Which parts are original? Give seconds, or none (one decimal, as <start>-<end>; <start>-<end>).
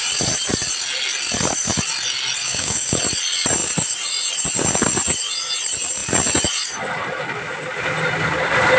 0.0-2.4; 3.0-8.8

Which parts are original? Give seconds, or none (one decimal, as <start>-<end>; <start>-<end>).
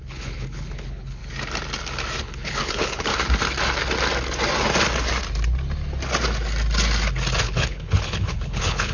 1.2-2.2; 3.1-7.4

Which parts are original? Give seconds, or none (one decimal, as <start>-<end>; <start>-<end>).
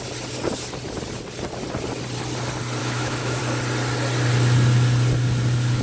0.0-2.8; 3.4-5.8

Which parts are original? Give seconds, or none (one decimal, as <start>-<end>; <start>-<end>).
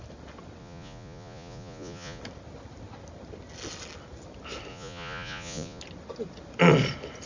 0.0-0.6; 2.2-4.7; 5.8-7.3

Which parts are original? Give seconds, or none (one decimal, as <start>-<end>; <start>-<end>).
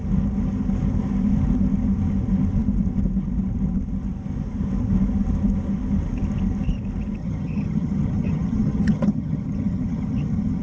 0.0-7.2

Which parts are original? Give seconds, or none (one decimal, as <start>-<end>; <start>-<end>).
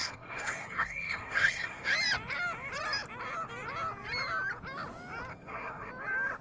1.9-5.3; 5.9-6.4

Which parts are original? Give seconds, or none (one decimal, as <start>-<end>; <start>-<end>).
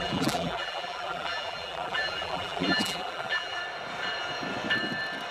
3.6-5.3